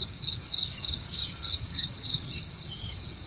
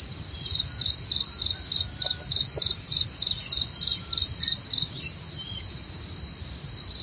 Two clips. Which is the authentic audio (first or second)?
second